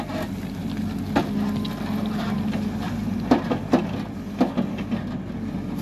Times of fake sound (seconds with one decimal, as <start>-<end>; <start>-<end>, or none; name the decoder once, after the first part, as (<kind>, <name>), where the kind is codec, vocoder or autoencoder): none